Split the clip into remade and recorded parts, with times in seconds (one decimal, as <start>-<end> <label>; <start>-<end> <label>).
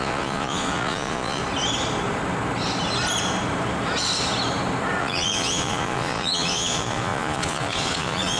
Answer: 0.0-1.4 remade; 1.4-5.0 recorded; 5.0-8.4 remade